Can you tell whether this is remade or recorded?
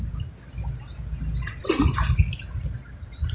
recorded